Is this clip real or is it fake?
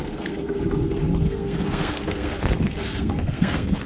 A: fake